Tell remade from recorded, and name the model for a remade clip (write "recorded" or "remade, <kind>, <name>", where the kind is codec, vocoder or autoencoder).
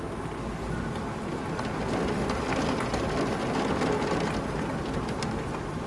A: recorded